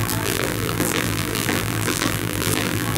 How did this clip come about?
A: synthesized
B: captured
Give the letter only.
A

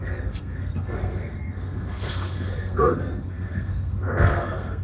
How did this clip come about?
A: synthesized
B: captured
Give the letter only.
A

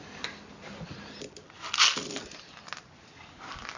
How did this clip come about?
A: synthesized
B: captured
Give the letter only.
B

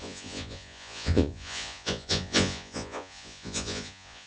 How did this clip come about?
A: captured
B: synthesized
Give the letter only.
B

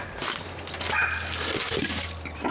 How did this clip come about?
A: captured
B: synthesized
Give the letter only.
A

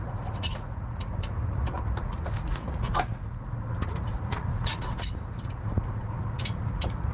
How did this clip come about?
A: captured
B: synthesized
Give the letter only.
B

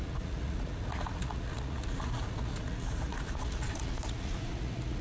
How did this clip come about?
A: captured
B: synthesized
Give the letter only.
B